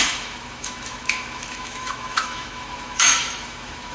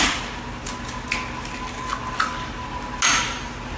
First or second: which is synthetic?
first